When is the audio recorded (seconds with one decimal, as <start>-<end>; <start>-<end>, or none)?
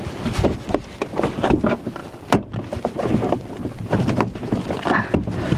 0.0-5.6